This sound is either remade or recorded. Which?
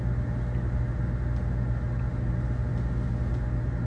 recorded